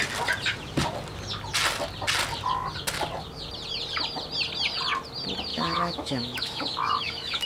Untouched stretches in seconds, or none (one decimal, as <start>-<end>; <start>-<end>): 0.0-5.5